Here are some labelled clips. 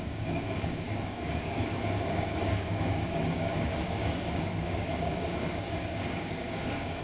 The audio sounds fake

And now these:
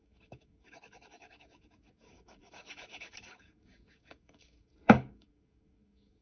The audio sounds fake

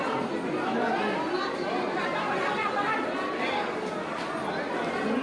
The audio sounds real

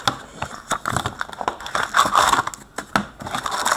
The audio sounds real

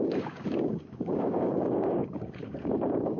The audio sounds fake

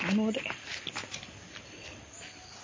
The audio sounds real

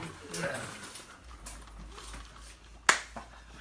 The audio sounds real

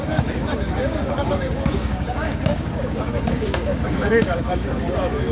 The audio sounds fake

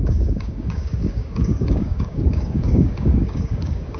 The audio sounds fake